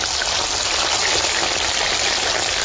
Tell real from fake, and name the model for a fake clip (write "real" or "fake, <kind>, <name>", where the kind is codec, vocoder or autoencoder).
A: real